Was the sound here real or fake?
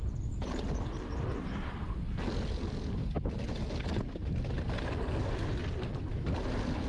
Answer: real